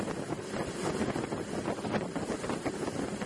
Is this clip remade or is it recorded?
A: recorded